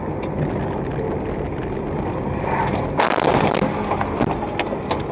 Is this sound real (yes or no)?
yes